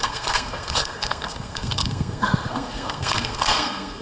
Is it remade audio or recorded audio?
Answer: remade